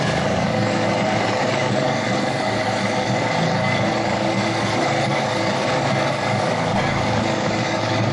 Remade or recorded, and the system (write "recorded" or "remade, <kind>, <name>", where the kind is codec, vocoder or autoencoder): remade, codec, DAC